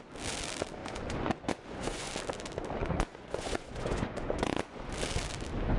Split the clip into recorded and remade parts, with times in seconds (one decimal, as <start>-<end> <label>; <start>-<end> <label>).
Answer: 0.0-0.8 recorded; 0.8-2.1 remade; 2.1-2.8 recorded; 2.8-4.9 remade; 4.9-5.8 recorded